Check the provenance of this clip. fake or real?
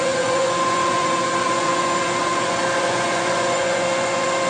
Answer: fake